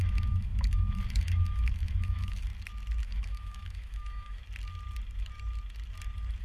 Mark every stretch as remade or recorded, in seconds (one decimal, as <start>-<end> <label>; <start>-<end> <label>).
0.0-2.5 remade; 2.5-3.0 recorded; 3.0-4.4 remade; 4.4-6.4 recorded